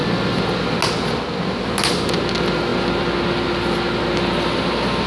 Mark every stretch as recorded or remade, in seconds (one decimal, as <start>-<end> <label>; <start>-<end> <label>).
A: 0.0-5.1 recorded